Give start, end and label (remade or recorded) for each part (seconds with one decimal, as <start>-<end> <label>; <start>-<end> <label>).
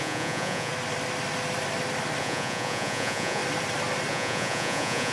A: 0.0-0.7 remade; 0.7-2.2 recorded; 2.2-3.4 remade; 3.4-4.1 recorded; 4.1-5.1 remade